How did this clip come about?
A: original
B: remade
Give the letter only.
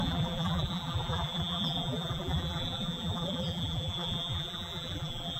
B